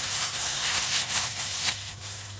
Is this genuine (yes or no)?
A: no